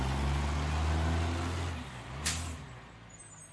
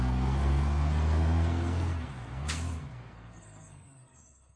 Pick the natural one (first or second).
first